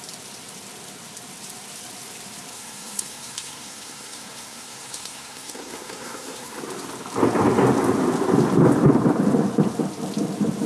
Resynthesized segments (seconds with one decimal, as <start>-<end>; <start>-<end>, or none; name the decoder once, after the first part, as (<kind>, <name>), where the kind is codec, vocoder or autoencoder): 2.5-6.6 (codec, SNAC)